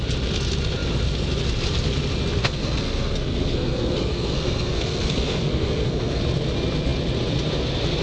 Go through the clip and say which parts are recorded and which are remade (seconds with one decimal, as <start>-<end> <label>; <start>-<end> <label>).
0.0-2.4 recorded; 2.4-6.2 remade; 6.2-8.0 recorded